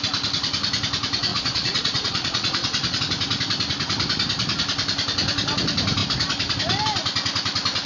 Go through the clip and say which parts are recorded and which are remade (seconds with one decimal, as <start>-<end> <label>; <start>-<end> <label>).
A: 0.0-1.3 recorded; 1.3-3.0 remade; 3.0-7.9 recorded